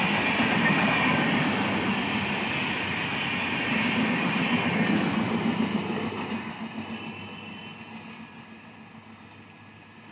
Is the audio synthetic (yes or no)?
no